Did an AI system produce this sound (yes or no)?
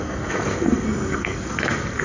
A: yes